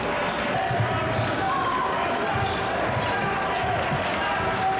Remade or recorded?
recorded